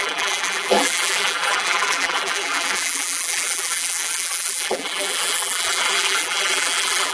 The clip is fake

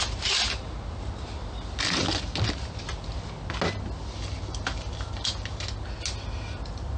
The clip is real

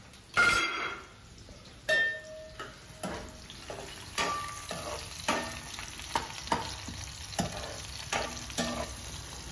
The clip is real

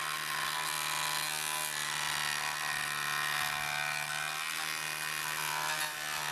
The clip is real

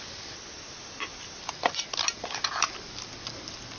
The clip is real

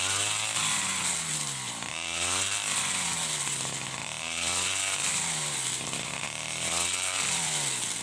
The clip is real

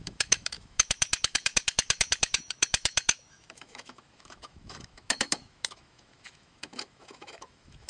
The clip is fake